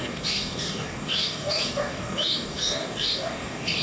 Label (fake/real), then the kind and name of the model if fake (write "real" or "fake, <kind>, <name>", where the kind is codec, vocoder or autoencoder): fake, codec, DAC